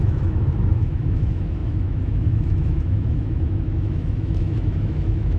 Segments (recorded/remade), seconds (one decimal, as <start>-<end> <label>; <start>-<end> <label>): 0.0-5.4 remade